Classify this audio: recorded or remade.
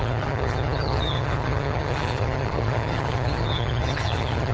remade